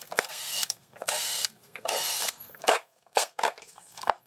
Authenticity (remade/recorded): remade